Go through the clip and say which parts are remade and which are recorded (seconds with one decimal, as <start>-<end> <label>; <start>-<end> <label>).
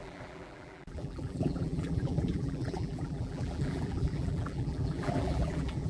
0.0-5.9 remade